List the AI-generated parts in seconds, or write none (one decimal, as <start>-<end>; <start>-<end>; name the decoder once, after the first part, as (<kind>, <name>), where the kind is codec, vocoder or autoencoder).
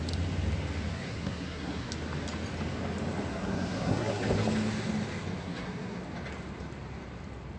0.9-1.9 (codec, SNAC); 3.3-4.2; 5.4-6.0